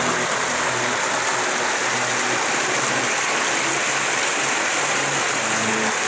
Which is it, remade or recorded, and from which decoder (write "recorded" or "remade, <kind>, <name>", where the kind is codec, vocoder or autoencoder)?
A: recorded